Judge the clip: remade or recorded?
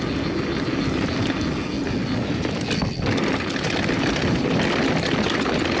recorded